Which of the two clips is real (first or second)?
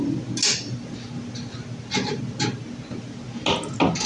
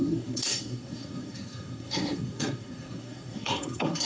first